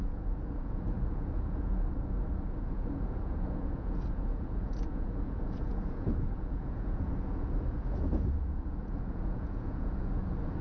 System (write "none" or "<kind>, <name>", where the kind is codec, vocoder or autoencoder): vocoder, Vocos